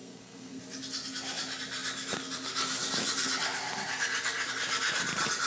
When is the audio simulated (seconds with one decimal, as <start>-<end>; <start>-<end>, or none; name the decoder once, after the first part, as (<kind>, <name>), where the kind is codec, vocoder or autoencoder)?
0.0-0.6 (codec, SNAC)